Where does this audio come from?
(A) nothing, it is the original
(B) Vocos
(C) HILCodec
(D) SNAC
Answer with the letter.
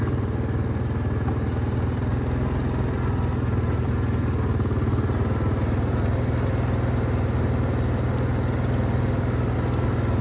A